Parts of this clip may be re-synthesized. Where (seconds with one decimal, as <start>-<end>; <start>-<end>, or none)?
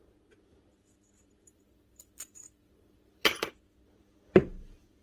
0.7-3.5